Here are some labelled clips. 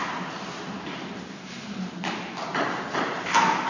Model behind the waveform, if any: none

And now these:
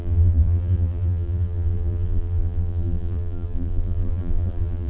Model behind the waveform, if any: vocoder, BigVGAN v2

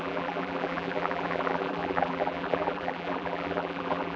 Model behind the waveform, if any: vocoder, BigVGAN v2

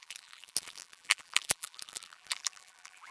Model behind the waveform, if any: vocoder, BigVGAN v2